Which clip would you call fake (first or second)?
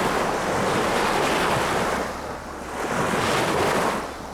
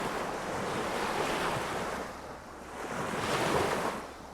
second